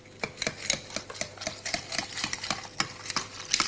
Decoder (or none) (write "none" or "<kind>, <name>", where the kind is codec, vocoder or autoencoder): none